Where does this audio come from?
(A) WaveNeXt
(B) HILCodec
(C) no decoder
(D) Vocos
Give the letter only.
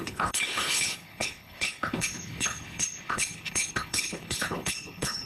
B